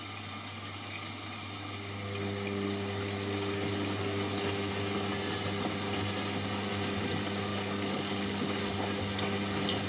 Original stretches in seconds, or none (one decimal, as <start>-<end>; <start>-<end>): 0.0-7.5; 8.6-9.9